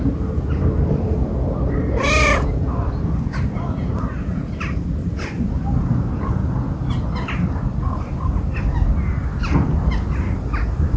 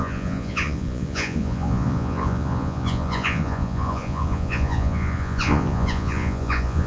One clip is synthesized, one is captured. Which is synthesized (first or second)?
second